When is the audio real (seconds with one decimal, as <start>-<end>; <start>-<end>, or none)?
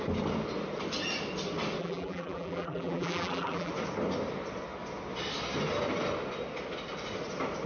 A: 0.0-1.8; 3.7-7.7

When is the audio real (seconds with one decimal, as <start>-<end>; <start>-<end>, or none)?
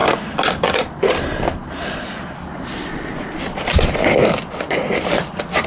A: 2.3-2.7; 3.2-5.7